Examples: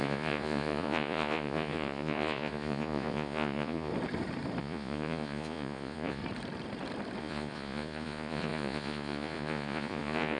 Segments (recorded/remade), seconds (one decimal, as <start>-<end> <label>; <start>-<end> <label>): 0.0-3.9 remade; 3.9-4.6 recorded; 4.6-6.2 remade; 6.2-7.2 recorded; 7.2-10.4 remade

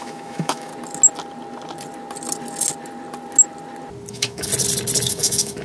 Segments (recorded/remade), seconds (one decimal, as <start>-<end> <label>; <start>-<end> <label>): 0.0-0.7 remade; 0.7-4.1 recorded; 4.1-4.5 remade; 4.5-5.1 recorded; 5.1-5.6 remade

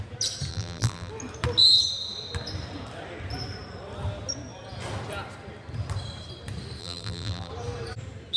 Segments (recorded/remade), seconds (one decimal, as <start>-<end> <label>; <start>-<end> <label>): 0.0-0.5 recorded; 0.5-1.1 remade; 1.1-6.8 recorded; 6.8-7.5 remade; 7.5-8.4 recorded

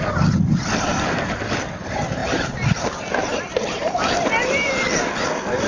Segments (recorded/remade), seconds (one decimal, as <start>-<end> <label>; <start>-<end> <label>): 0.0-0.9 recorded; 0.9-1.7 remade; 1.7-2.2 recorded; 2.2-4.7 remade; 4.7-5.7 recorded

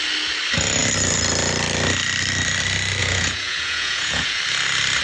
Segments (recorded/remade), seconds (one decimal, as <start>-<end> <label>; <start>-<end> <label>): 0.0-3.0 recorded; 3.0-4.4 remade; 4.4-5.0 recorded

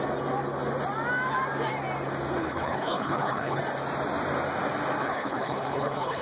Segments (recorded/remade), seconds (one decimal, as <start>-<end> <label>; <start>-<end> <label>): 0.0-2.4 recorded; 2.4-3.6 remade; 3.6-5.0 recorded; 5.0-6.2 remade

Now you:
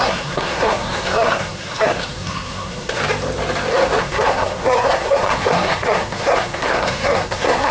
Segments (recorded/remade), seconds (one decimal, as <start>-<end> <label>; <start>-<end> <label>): 0.0-3.0 remade; 3.0-4.0 recorded; 4.0-7.7 remade

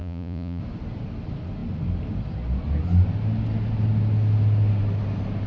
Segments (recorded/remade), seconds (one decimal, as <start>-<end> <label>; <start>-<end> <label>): 0.0-0.6 remade; 0.6-5.5 recorded